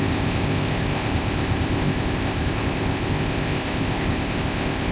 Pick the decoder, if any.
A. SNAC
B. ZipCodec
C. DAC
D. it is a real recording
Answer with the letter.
B